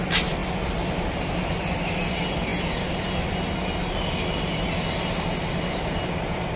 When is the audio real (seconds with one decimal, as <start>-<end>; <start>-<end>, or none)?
0.0-6.6